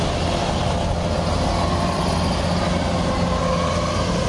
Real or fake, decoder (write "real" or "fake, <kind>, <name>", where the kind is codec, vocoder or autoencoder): real